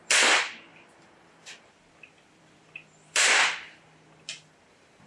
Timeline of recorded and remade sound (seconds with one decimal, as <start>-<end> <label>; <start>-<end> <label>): 0.0-0.7 recorded; 0.7-3.8 remade; 3.8-5.1 recorded